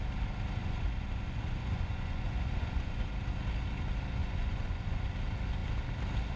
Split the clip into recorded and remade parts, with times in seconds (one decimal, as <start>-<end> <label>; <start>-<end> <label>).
0.0-0.6 recorded; 0.6-3.1 remade; 3.1-4.2 recorded; 4.2-5.1 remade; 5.1-6.4 recorded